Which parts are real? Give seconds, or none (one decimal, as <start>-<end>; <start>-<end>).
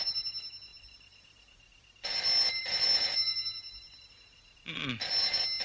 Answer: 0.0-0.7; 4.1-5.6